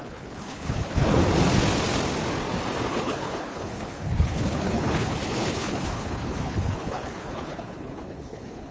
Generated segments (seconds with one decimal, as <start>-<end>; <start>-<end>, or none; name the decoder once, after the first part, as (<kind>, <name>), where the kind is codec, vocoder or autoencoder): 0.0-1.2 (codec, HILCodec); 2.9-8.7